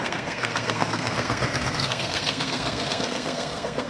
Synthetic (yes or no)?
yes